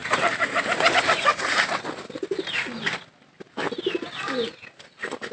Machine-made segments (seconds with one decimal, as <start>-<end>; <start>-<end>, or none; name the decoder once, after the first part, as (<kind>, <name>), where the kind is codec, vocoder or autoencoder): 0.0-0.6 (vocoder, BigVGAN v2); 1.3-1.8